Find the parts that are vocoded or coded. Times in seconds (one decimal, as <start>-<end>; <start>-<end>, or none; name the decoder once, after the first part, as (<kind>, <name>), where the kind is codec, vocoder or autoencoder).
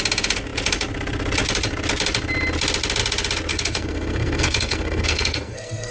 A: 3.5-5.9 (codec, SNAC)